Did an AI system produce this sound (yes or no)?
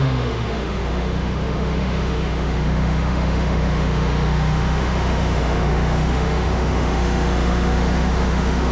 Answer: yes